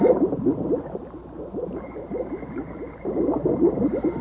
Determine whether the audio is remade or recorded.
recorded